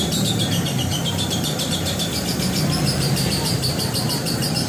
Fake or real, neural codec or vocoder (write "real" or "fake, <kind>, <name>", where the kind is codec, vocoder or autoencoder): fake, vocoder, BigVGAN v2